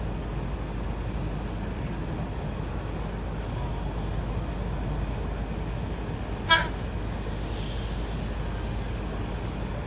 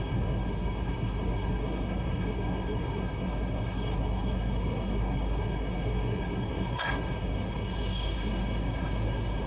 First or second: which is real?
first